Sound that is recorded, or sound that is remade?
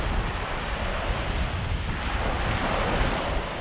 recorded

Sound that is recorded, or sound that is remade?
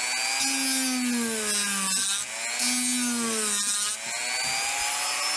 recorded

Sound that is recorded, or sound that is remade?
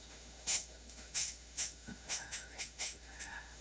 remade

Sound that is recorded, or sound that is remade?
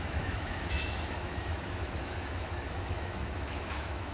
remade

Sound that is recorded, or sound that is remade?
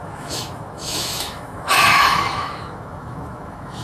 remade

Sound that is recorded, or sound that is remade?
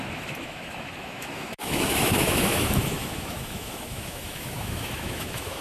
remade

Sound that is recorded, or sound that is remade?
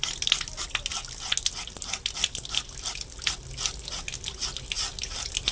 recorded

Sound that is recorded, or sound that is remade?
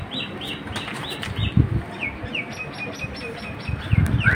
recorded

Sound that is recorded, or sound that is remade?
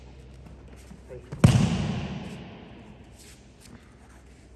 recorded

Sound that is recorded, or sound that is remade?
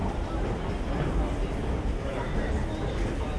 recorded